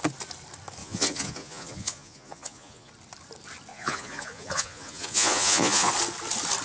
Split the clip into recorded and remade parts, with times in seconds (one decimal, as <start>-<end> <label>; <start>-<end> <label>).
0.0-0.8 recorded; 0.8-2.9 remade; 2.9-3.7 recorded; 3.7-5.9 remade; 5.9-6.6 recorded

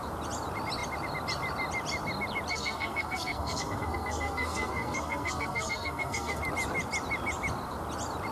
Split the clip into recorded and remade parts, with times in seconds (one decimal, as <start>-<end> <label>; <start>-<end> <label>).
0.0-2.5 recorded; 2.5-6.4 remade; 6.4-8.3 recorded

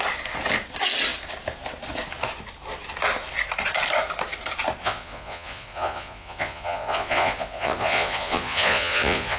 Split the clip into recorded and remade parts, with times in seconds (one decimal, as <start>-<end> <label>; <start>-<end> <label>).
0.0-4.8 recorded; 4.8-9.4 remade